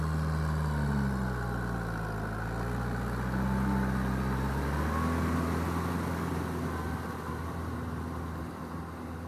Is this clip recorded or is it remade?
recorded